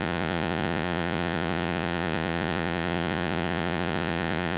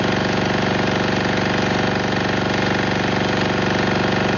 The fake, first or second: first